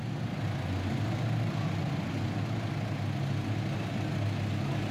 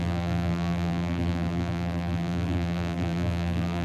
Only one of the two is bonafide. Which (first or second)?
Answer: first